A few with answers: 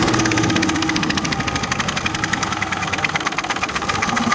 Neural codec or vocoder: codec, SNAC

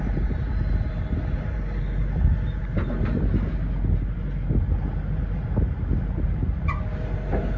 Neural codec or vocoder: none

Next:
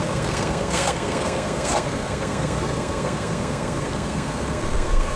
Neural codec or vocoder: codec, SNAC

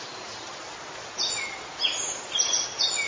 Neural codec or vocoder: none